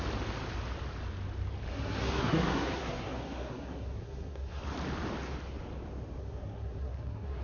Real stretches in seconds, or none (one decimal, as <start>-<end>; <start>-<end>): 0.0-1.7; 4.6-6.2